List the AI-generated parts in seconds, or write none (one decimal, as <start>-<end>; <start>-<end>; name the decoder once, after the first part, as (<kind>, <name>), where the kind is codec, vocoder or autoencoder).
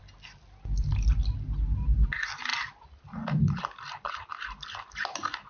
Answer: none